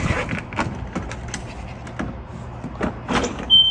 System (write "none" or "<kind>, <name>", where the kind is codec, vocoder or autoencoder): none